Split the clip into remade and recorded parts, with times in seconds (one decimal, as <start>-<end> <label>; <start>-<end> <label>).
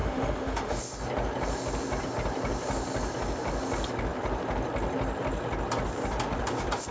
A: 0.0-0.8 remade; 0.8-6.9 recorded